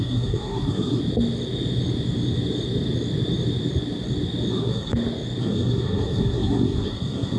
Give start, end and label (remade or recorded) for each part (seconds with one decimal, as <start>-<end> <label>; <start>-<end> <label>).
0.0-1.0 remade; 1.0-4.5 recorded; 4.5-4.9 remade; 4.9-5.4 recorded; 5.4-7.4 remade